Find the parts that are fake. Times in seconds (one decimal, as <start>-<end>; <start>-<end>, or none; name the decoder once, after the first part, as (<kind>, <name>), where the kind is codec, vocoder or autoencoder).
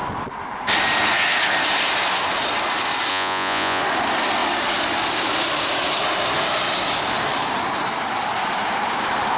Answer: 3.1-3.8 (vocoder, Vocos)